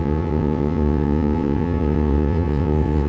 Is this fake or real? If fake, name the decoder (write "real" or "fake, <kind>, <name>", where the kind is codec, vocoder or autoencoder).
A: fake, vocoder, WaveNeXt